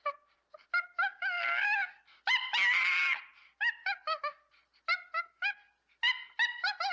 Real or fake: real